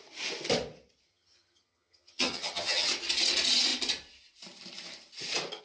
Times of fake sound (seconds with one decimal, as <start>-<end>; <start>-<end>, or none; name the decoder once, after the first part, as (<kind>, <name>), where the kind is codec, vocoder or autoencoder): 1.1-2.9 (vocoder, HiFi-GAN)